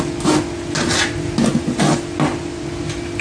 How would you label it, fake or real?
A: real